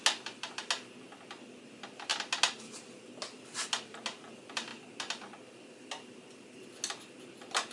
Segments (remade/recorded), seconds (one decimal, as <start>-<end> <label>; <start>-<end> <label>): 0.0-7.7 recorded